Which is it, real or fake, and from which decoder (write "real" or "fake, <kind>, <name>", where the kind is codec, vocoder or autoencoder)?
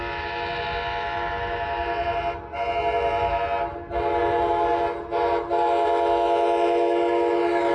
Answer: real